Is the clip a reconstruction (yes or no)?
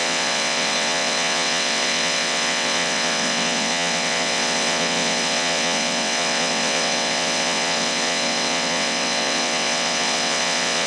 yes